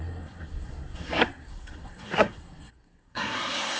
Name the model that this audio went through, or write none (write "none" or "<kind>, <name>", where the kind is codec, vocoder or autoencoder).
codec, SNAC